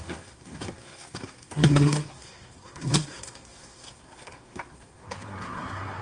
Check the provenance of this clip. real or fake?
fake